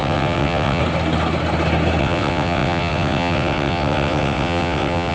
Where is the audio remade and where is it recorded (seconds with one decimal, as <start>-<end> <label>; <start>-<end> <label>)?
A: 0.0-0.8 remade; 0.8-2.0 recorded; 2.0-5.1 remade